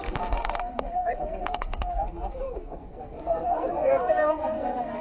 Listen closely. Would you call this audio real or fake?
fake